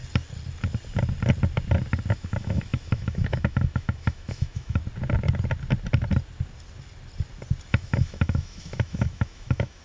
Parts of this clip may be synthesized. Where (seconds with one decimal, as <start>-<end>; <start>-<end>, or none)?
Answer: 2.1-4.8; 7.7-9.8